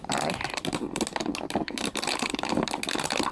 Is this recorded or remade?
recorded